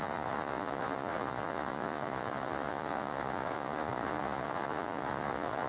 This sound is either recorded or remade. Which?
remade